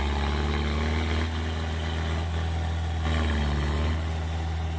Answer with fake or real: real